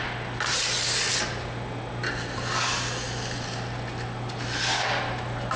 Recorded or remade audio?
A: recorded